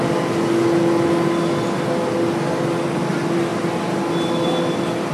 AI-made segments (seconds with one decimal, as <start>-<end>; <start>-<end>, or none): none